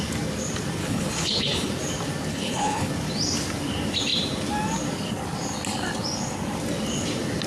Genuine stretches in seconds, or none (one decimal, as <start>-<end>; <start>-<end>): 0.0-0.8; 1.7-2.3; 2.9-7.5